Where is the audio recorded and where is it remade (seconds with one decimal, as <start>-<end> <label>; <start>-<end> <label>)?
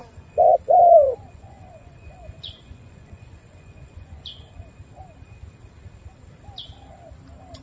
0.0-4.6 remade; 4.6-7.6 recorded